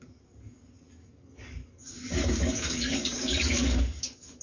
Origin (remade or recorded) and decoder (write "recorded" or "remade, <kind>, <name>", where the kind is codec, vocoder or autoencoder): remade, codec, DAC